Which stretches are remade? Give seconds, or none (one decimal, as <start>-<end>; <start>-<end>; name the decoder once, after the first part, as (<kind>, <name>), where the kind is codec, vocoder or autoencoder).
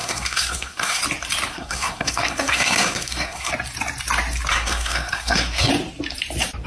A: 0.0-1.0 (codec, SNAC); 1.5-3.5; 4.5-5.7